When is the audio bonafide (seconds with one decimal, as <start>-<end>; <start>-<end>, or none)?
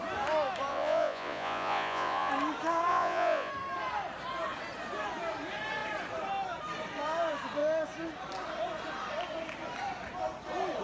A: 0.0-0.7; 2.3-2.9; 3.5-10.8